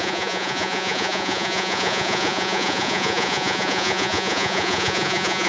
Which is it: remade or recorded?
remade